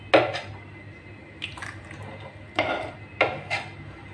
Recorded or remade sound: recorded